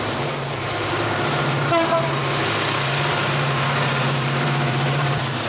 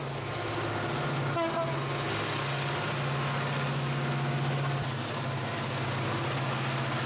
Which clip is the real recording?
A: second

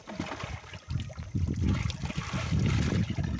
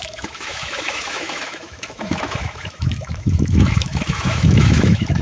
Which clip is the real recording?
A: first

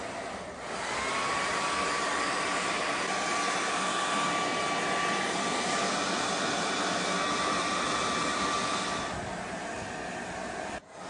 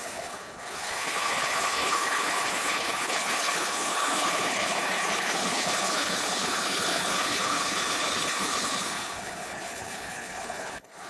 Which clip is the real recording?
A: first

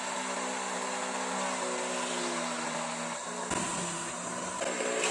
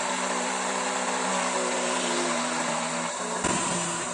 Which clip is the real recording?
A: first